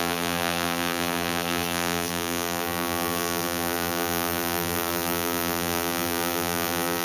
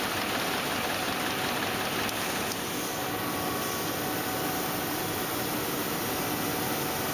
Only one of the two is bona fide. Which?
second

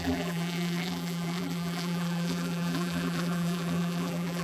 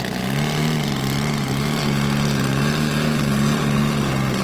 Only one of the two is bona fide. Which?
second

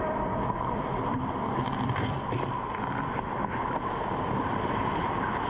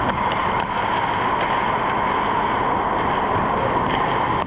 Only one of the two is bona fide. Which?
second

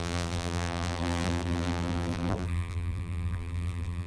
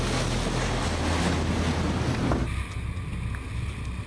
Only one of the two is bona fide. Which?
second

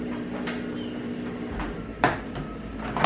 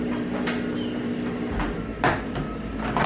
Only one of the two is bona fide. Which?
second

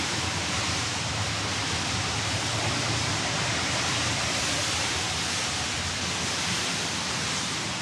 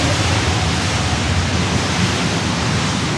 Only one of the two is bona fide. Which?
second